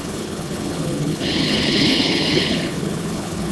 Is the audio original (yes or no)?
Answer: no